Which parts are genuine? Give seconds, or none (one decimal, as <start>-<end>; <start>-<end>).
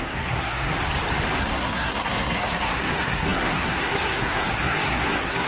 0.7-1.4